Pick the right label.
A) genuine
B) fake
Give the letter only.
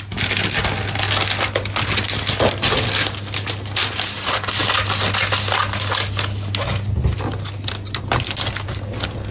A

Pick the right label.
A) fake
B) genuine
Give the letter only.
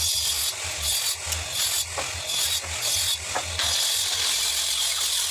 B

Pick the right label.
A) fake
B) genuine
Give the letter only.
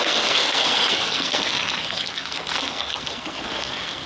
A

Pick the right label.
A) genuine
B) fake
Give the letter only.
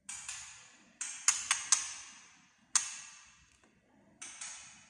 A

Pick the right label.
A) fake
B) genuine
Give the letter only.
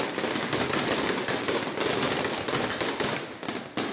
B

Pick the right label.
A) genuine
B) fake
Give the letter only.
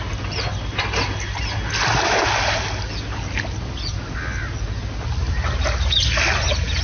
A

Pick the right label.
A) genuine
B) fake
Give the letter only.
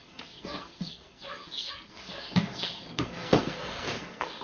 B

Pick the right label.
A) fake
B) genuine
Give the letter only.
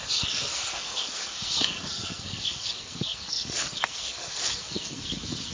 A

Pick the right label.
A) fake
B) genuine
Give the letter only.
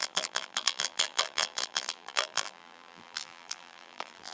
A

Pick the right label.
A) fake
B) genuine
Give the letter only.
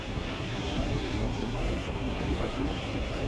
A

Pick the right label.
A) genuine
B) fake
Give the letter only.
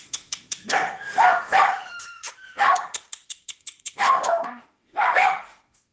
B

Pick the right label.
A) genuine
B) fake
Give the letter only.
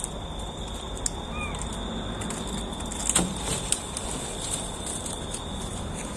A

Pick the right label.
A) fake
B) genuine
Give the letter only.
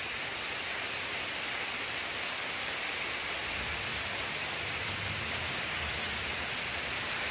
B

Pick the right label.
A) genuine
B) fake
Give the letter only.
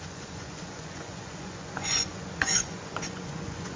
B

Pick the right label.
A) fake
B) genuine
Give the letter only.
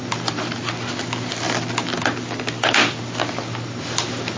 B